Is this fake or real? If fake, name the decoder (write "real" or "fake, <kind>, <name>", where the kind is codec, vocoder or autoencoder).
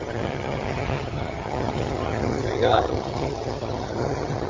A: fake, vocoder, HiFi-GAN